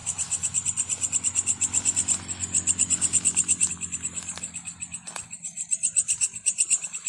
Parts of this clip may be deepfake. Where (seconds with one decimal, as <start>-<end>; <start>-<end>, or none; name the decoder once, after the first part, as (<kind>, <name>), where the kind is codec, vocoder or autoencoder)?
none